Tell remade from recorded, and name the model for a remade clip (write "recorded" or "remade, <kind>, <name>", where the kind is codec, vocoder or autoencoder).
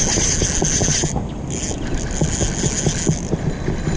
recorded